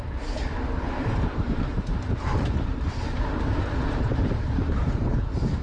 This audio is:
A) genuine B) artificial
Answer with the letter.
B